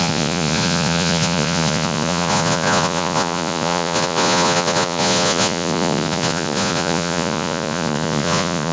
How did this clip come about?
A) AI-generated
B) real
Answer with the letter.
A